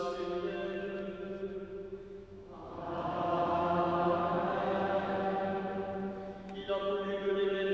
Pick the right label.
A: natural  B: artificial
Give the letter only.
B